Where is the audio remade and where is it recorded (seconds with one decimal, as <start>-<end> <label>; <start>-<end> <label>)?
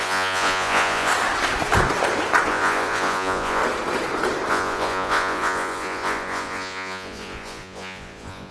0.0-1.1 remade; 1.1-2.5 recorded; 2.5-3.6 remade; 3.6-4.5 recorded; 4.5-8.5 remade